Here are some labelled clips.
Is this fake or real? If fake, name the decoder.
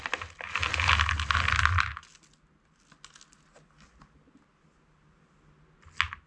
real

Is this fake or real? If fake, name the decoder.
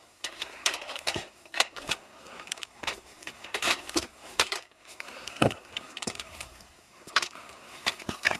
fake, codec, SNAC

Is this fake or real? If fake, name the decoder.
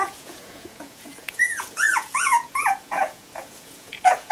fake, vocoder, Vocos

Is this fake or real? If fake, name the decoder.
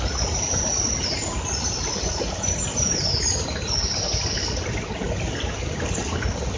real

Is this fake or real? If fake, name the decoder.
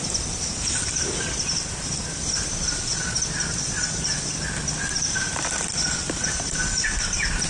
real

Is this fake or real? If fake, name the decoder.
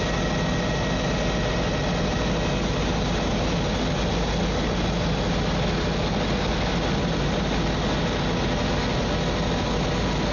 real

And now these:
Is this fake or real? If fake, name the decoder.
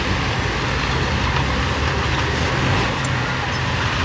real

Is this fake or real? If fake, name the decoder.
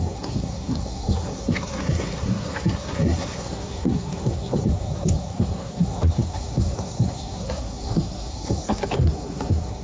fake, codec, SNAC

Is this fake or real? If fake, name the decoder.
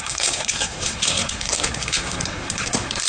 fake, codec, SNAC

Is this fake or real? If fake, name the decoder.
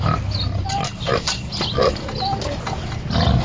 real